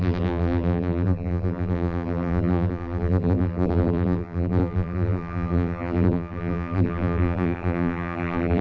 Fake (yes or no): yes